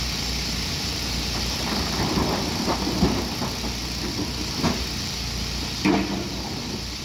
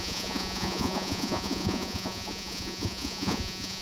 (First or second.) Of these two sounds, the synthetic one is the second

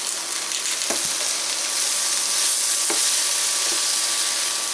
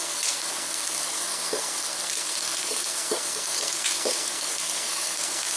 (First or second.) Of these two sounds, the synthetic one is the second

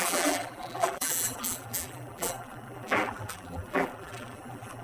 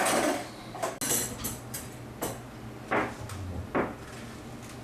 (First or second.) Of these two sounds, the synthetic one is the first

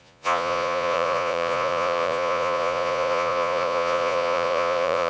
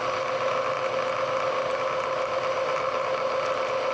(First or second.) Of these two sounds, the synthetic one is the first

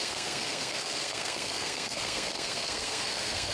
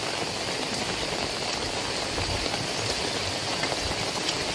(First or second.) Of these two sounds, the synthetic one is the first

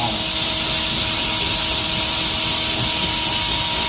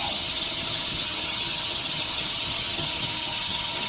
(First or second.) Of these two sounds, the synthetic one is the second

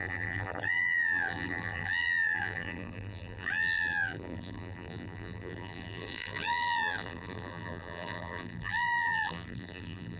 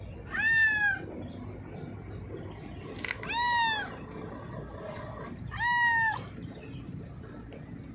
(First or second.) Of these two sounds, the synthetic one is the first